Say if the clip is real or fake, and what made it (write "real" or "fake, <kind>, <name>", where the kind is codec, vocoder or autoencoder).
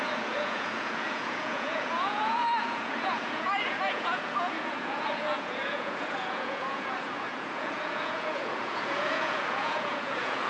fake, vocoder, Vocos